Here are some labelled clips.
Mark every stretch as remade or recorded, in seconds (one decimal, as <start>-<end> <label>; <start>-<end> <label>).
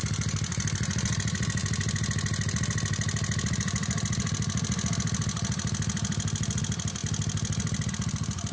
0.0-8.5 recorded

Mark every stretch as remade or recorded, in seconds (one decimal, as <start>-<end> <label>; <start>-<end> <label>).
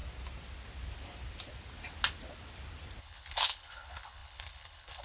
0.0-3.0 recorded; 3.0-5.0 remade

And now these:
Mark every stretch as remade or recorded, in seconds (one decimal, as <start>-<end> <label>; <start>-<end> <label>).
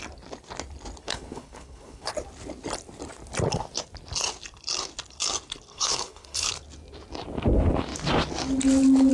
0.0-1.0 recorded; 1.0-2.1 remade; 2.1-5.7 recorded; 5.7-6.5 remade; 6.5-9.1 recorded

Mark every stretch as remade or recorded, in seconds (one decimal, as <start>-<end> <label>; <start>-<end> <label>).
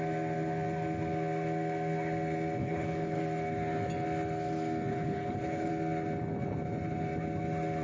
0.0-2.6 recorded; 2.6-3.2 remade; 3.2-4.9 recorded; 4.9-5.7 remade; 5.7-7.8 recorded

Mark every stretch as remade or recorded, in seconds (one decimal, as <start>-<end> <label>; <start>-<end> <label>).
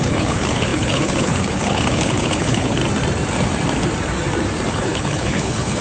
0.0-2.8 remade; 2.8-4.7 recorded; 4.7-5.8 remade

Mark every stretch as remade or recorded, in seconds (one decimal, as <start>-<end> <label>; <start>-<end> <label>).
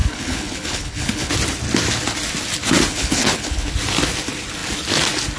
0.0-1.3 remade; 1.3-2.9 recorded; 2.9-3.7 remade; 3.7-5.4 recorded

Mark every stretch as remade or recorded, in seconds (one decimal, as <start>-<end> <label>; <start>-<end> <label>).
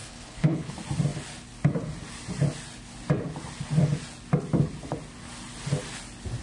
0.0-0.7 remade; 0.7-6.4 recorded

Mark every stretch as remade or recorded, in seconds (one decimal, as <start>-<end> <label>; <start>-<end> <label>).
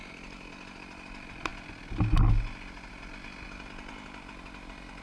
0.0-5.0 recorded